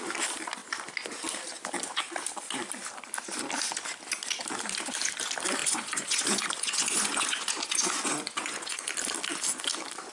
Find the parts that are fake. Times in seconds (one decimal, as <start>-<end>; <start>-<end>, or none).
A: 5.6-8.9